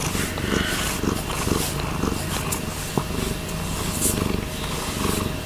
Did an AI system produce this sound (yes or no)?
no